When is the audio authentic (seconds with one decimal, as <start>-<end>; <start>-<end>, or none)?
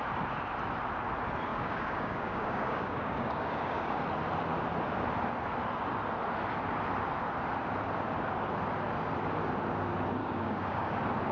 0.0-1.5; 4.0-10.2; 10.9-11.3